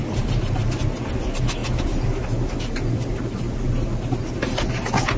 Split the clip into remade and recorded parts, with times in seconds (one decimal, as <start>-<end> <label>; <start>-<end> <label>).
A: 0.0-5.2 recorded